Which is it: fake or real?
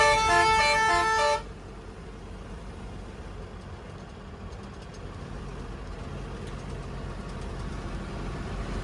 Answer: real